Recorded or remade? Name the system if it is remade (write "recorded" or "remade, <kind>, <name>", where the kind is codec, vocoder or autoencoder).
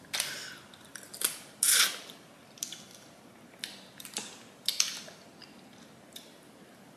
recorded